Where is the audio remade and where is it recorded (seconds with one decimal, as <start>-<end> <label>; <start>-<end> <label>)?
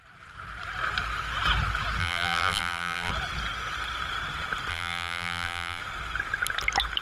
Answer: 0.0-2.0 recorded; 2.0-3.1 remade; 3.1-4.7 recorded; 4.7-5.8 remade; 5.8-7.0 recorded